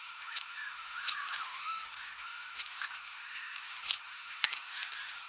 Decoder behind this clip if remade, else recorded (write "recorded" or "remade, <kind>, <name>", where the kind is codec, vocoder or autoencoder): remade, autoencoder, DAC-VAE